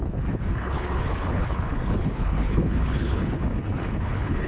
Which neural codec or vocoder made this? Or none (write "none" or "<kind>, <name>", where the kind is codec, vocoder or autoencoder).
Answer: codec, HILCodec